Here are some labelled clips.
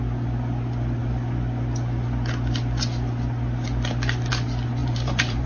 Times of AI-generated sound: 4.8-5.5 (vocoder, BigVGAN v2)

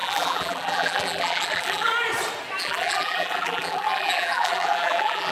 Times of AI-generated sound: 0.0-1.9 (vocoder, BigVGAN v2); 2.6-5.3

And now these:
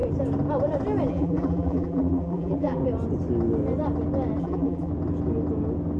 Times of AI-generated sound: 1.1-2.8 (vocoder, BigVGAN v2); 4.4-4.9